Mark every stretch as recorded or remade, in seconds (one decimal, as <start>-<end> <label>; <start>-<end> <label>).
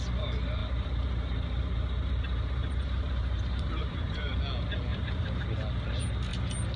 0.0-0.6 recorded; 0.6-4.4 remade; 4.4-4.9 recorded; 4.9-5.4 remade; 5.4-6.8 recorded